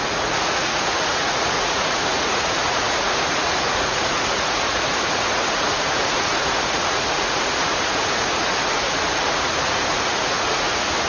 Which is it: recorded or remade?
remade